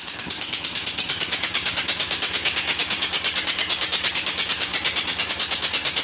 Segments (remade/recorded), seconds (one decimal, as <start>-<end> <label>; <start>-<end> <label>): 0.0-4.7 remade; 4.7-5.3 recorded; 5.3-6.0 remade